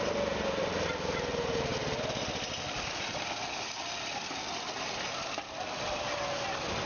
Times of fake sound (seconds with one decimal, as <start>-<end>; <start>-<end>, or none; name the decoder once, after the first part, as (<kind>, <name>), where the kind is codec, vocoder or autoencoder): none